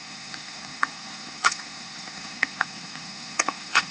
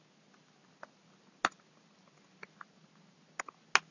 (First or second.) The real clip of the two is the second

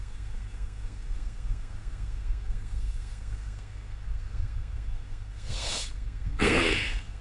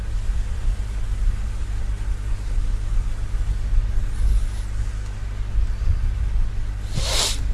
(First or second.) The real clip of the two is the second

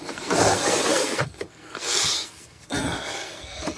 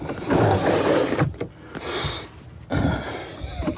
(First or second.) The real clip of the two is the second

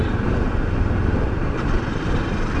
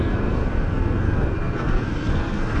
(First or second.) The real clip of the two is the first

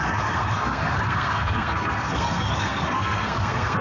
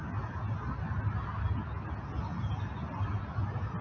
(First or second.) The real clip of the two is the second